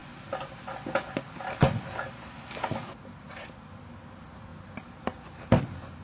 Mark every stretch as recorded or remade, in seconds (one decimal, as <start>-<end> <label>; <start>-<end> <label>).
0.0-6.0 recorded